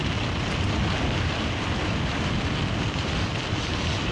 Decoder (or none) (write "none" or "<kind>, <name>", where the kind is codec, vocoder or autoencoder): none